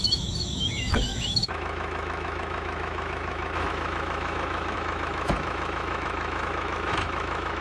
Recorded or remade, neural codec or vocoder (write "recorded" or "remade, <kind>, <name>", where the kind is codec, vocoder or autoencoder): remade, autoencoder, DAC-VAE